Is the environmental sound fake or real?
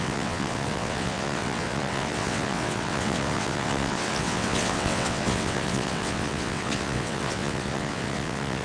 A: fake